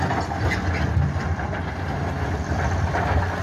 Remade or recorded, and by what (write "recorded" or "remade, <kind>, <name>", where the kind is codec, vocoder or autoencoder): recorded